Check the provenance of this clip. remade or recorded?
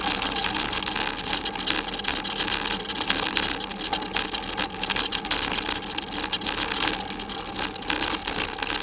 recorded